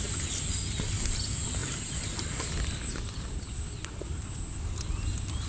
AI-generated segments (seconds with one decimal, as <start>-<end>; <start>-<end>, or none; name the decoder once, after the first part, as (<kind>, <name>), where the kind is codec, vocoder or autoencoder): none